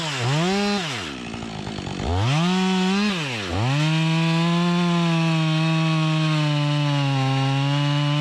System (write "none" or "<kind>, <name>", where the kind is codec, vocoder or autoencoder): none